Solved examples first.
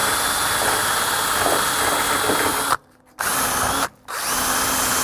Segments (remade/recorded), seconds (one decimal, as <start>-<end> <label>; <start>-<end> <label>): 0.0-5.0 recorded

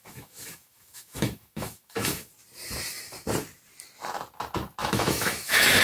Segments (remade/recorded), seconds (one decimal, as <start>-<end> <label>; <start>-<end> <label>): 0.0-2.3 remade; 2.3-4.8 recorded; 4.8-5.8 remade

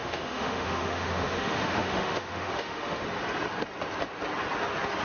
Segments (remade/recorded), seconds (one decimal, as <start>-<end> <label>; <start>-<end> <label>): 0.0-3.0 remade; 3.0-5.0 recorded